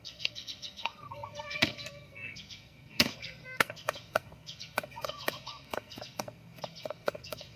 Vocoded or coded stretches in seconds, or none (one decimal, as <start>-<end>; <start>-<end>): 0.0-7.6